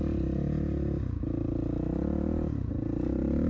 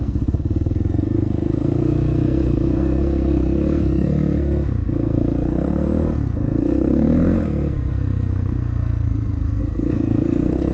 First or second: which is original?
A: first